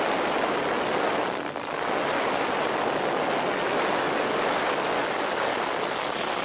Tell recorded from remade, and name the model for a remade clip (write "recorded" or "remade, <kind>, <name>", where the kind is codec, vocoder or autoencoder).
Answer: recorded